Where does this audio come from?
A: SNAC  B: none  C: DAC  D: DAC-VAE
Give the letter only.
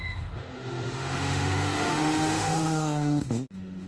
D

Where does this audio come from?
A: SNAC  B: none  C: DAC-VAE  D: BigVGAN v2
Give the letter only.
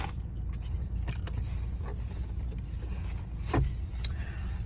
B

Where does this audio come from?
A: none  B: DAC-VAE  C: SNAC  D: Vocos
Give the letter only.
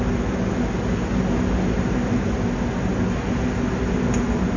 A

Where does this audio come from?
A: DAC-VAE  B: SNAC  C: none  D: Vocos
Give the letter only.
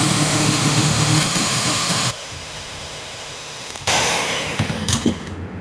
A